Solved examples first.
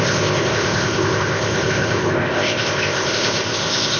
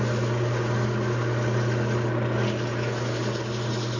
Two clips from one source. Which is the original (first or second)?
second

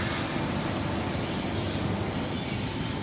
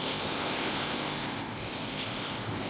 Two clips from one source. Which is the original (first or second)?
first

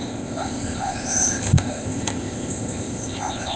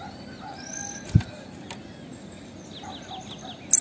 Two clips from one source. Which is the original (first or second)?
second